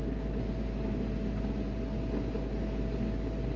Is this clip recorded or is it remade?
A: recorded